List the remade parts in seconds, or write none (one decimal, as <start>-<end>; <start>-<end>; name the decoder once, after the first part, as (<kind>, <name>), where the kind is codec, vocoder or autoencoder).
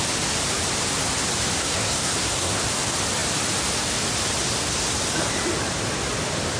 1.6-2.6 (codec, SNAC)